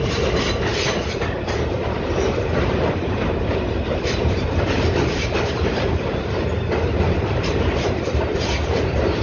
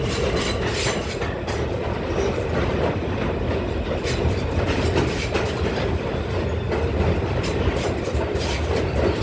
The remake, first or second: first